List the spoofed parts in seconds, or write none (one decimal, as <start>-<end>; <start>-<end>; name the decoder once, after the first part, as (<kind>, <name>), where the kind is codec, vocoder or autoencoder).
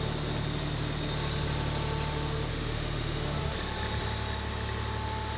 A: 2.5-3.4 (autoencoder, DAC-VAE)